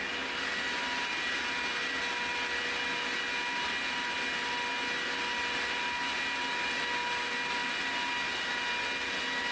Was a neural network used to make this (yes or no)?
no